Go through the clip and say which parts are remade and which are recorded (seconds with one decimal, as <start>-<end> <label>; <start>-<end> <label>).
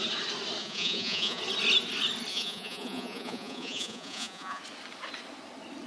0.0-0.6 recorded; 0.6-1.4 remade; 1.4-2.3 recorded; 2.3-4.6 remade; 4.6-5.9 recorded